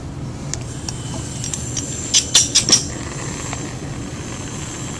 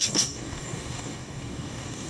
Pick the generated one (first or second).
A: second